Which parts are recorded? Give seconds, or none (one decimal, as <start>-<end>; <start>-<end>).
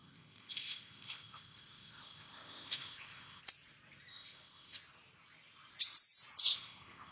3.4-4.1; 4.8-6.5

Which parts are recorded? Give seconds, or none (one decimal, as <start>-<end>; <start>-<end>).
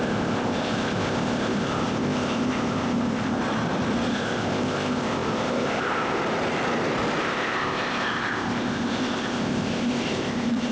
3.4-4.1; 6.2-7.2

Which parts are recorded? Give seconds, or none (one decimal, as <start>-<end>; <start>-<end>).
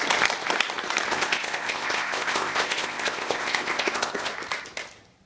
0.0-1.1; 4.3-5.3